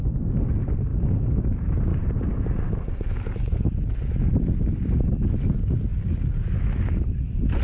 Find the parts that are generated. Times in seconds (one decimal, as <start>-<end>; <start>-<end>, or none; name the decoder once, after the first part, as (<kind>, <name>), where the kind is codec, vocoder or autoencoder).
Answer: none